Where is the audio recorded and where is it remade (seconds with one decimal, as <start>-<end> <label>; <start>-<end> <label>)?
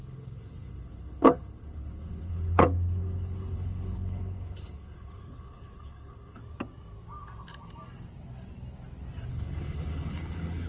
0.0-6.4 remade; 6.4-9.3 recorded; 9.3-10.7 remade